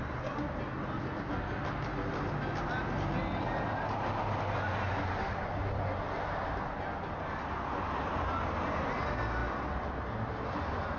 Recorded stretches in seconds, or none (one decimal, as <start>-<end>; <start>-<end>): 0.0-11.0